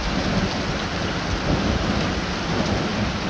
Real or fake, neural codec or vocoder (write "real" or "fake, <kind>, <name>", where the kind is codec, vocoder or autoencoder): real